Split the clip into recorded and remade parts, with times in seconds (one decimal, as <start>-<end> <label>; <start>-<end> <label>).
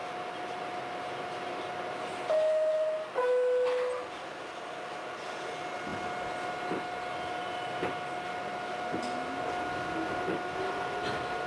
0.0-11.5 recorded